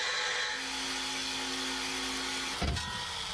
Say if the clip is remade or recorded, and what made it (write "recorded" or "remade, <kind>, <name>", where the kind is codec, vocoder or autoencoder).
recorded